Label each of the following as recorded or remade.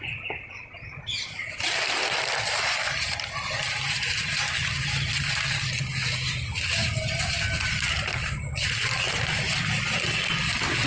recorded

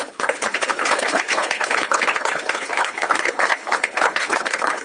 remade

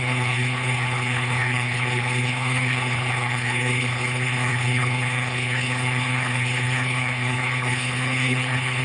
remade